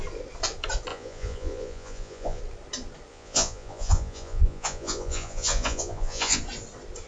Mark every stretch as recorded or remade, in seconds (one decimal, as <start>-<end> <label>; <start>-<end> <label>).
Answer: 0.0-0.9 recorded; 0.9-2.4 remade; 2.4-3.1 recorded; 3.1-6.4 remade; 6.4-7.1 recorded